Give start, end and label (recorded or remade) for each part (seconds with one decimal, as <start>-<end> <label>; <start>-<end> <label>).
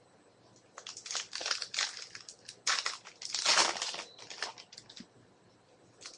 0.0-6.2 recorded